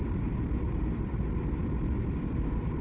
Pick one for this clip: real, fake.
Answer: real